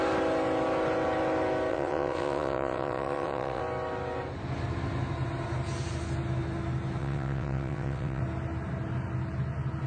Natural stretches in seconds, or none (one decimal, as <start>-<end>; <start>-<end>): 0.0-1.7; 3.6-7.0; 8.2-9.9